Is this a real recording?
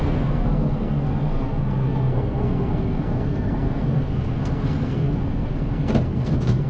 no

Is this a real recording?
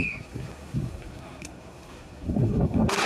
no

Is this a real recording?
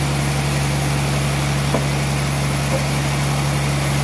yes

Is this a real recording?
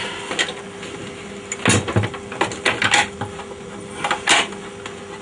yes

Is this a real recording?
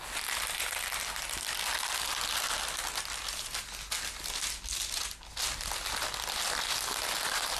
yes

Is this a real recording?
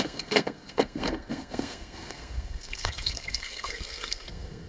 no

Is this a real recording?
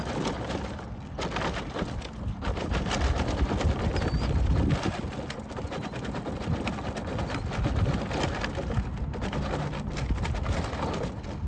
yes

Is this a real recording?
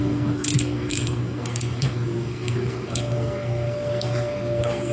no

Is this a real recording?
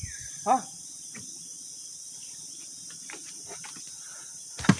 yes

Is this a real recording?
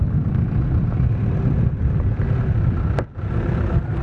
yes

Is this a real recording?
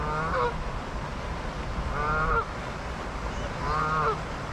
yes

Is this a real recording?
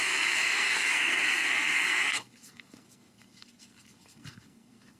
no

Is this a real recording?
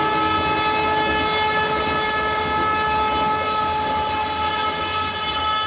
yes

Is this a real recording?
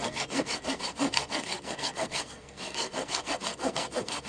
no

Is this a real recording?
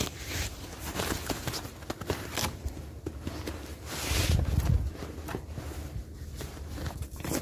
yes